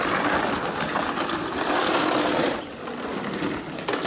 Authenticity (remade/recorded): recorded